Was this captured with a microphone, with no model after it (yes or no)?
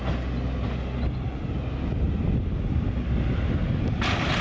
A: yes